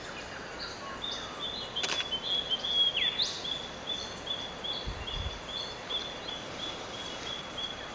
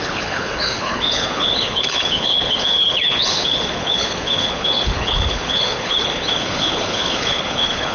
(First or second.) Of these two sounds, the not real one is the second